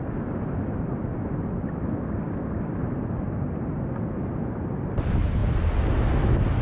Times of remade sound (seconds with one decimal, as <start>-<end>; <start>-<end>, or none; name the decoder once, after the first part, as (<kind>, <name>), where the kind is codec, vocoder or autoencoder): none